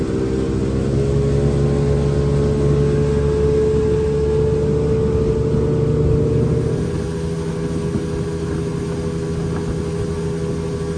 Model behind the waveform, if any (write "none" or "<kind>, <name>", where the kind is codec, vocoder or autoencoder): none